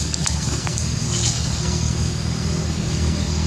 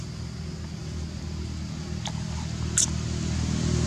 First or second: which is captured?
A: second